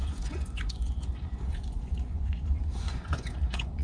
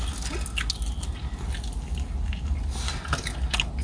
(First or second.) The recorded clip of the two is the second